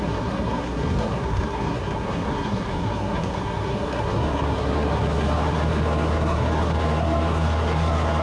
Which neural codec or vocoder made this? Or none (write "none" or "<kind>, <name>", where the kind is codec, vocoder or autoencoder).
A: codec, SNAC